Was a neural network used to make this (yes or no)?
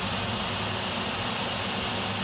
no